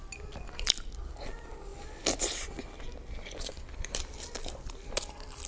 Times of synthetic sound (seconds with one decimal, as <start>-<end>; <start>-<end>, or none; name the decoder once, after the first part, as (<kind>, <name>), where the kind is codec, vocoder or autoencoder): none